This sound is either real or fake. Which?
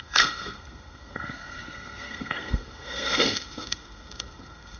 fake